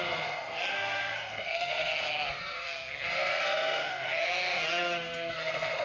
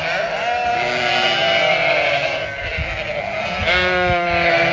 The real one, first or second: second